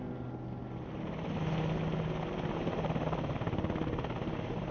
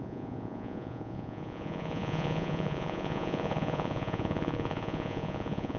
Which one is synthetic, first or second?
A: second